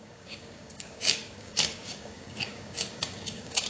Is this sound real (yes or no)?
no